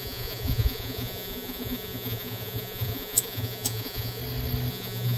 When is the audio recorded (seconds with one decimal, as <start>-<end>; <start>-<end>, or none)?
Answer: 4.2-4.7